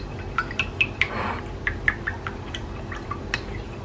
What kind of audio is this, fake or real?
real